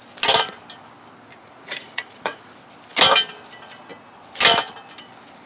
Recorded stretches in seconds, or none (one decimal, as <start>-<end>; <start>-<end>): 0.0-1.3; 2.4-5.5